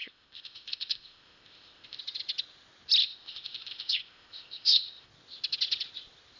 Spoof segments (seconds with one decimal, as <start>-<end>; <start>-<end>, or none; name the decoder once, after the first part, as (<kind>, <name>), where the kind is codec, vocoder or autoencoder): 0.0-2.0 (codec, ZipCodec); 3.0-5.1